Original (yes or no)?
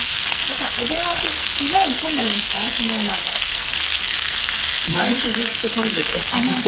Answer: no